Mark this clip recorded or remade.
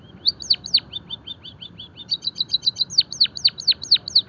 recorded